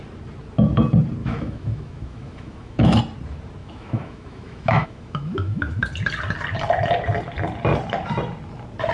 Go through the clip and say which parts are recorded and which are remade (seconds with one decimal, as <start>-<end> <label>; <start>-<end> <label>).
0.0-1.2 recorded; 1.2-3.0 remade; 3.0-3.6 recorded; 3.6-5.8 remade; 5.8-8.9 recorded